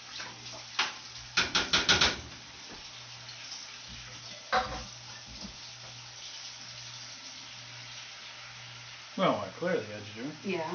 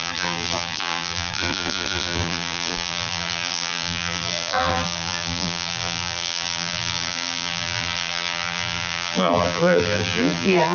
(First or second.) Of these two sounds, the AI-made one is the second